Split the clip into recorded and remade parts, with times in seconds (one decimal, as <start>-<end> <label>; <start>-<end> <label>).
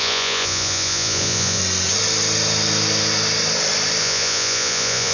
0.0-1.6 remade; 1.6-4.0 recorded; 4.0-5.1 remade